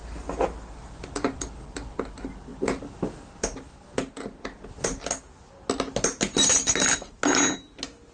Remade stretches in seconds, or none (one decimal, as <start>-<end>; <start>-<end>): none